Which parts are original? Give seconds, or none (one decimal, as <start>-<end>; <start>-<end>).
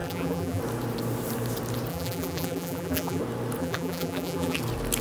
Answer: 0.6-1.9; 3.2-3.6; 4.6-5.0